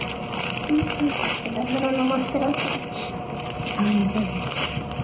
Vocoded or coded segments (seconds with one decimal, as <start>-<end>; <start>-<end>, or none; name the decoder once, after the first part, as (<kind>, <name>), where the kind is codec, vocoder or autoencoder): 0.0-5.0 (vocoder, BigVGAN v2)